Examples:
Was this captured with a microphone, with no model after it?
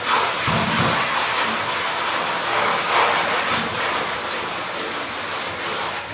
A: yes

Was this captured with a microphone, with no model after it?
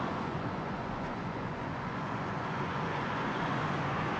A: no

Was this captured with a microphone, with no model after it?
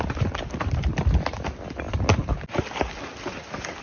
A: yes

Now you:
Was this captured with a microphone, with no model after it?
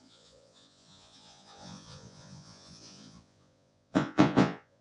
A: no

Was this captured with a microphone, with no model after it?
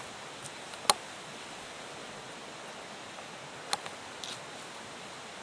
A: yes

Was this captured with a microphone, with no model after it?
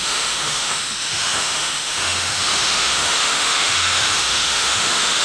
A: no